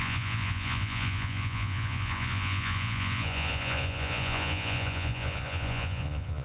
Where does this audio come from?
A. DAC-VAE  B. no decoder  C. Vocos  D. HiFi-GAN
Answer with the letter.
C